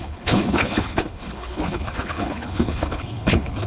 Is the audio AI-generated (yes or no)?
yes